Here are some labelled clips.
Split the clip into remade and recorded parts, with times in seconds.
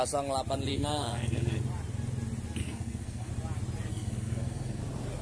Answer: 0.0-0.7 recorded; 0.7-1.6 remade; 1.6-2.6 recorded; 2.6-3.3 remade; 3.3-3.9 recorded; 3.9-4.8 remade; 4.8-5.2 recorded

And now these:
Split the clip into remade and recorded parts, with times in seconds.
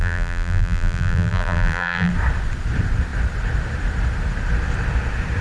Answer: 0.0-2.1 remade; 2.1-5.4 recorded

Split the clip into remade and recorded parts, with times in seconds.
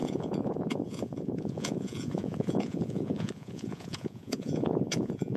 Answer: 0.0-5.4 remade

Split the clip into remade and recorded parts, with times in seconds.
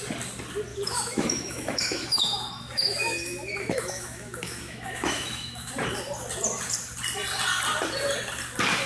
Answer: 0.0-0.7 recorded; 0.7-5.7 remade; 5.7-8.9 recorded